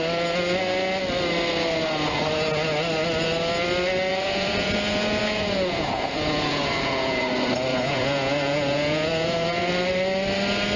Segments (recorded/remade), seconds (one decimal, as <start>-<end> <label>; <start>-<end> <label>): 0.0-4.1 recorded; 4.1-7.2 remade; 7.2-7.7 recorded; 7.7-9.7 remade; 9.7-10.8 recorded